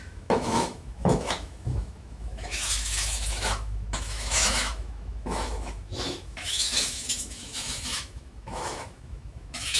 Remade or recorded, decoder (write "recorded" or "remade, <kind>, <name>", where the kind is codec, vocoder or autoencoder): remade, autoencoder, DAC-VAE